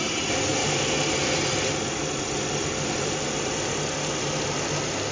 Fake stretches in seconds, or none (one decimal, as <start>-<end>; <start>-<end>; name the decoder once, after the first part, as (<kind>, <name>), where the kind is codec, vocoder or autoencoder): none